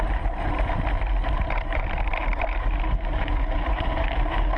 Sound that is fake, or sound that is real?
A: fake